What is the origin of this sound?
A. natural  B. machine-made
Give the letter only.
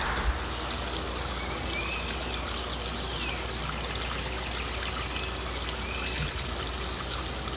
A